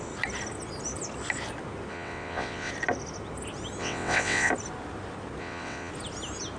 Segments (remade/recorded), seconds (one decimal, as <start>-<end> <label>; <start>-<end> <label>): 0.0-1.9 recorded; 1.9-2.7 remade; 2.7-3.8 recorded; 3.8-4.5 remade; 4.5-5.4 recorded; 5.4-5.9 remade; 5.9-6.6 recorded